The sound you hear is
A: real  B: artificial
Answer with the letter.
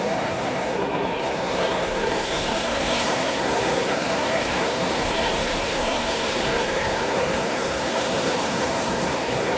B